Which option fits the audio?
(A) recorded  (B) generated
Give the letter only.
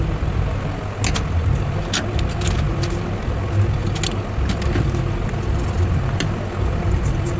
A